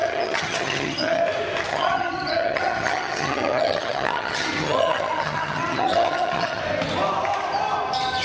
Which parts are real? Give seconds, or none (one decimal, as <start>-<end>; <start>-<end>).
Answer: 1.2-1.7; 6.6-8.2